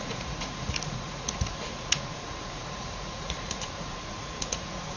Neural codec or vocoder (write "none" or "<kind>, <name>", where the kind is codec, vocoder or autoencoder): vocoder, Vocos